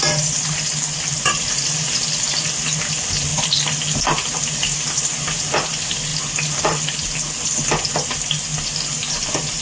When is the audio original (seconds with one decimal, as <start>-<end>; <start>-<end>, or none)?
0.0-9.6